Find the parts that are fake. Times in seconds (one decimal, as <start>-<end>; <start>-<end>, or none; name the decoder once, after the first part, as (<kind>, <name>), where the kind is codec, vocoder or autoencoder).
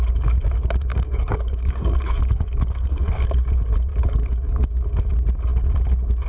0.9-3.3 (codec, DAC); 3.9-4.7